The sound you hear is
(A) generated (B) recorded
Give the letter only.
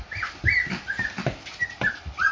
B